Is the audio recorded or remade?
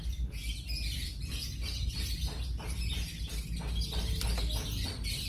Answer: recorded